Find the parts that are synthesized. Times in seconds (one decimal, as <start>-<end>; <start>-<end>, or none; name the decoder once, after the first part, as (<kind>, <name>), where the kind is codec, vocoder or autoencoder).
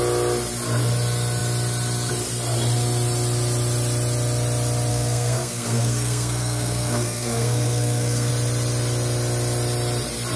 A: 4.9-8.3 (codec, SNAC)